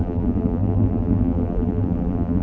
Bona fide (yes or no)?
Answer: no